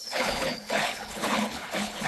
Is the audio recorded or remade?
remade